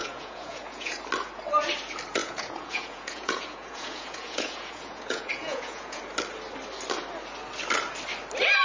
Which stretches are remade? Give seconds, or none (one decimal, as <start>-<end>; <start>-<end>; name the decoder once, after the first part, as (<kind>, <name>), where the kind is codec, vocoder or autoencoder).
0.0-1.0 (vocoder, Vocos); 2.2-6.0